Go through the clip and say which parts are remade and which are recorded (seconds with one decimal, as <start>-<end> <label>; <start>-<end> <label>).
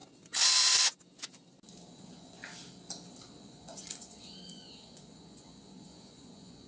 0.0-1.9 recorded; 1.9-2.4 remade; 2.4-3.4 recorded; 3.4-6.7 remade